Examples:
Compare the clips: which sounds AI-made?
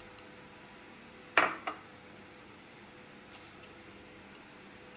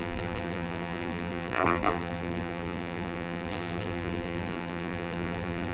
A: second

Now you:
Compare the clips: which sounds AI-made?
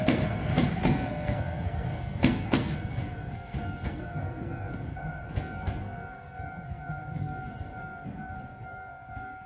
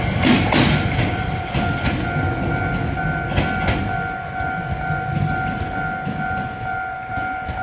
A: first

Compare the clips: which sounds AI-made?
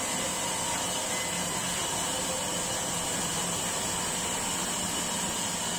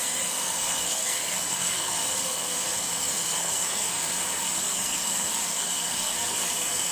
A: second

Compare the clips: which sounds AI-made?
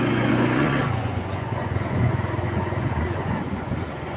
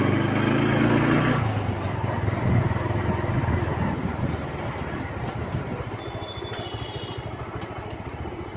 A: first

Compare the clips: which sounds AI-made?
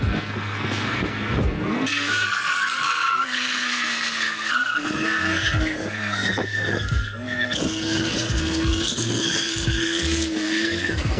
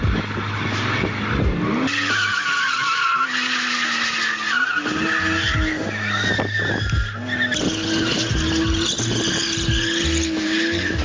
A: first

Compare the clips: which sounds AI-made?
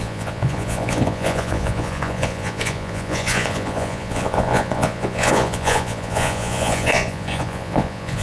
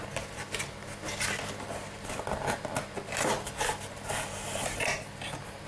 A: first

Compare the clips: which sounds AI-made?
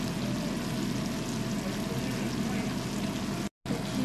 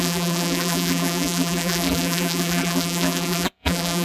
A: second